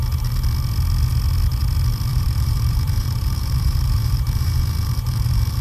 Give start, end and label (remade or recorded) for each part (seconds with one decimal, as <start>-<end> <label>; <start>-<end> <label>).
0.0-2.1 recorded; 2.1-5.6 remade